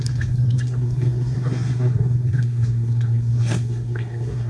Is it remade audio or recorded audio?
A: remade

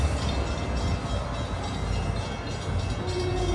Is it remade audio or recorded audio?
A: recorded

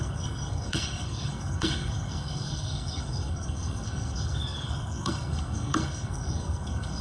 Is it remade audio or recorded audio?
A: remade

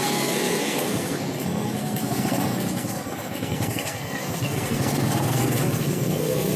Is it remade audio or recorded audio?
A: remade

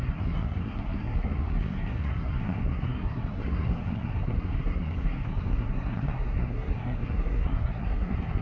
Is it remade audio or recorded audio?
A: remade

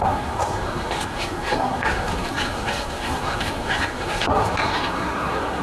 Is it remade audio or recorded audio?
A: remade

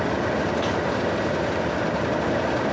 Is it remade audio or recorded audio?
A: recorded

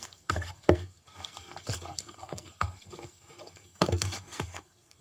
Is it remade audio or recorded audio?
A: remade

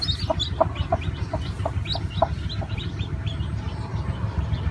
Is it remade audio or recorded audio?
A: recorded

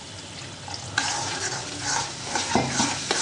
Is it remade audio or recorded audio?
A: recorded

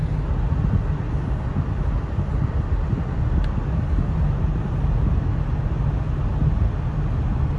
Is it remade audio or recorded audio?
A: recorded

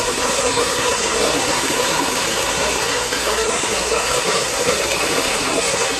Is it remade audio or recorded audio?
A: remade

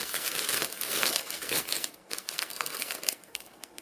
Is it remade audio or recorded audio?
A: remade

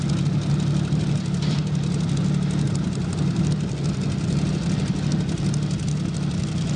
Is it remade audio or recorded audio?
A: recorded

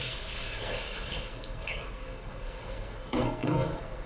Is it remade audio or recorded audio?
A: remade